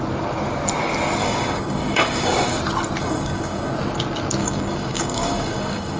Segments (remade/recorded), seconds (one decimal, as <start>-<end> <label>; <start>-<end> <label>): 0.0-1.2 recorded; 1.2-2.6 remade; 2.6-3.0 recorded; 3.0-3.7 remade; 3.7-4.4 recorded; 4.4-6.0 remade